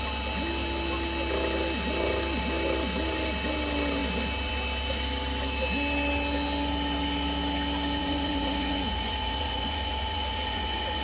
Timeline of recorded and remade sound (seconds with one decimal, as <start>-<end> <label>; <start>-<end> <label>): 0.0-8.0 recorded; 8.0-11.0 remade